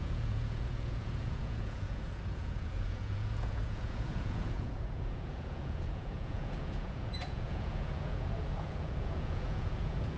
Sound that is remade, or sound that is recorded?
remade